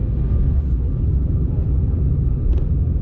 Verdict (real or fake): real